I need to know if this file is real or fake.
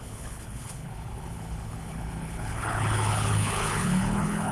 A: fake